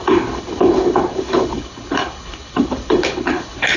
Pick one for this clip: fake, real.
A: fake